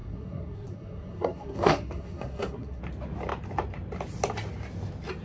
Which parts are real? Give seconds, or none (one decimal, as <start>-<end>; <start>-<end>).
2.8-5.2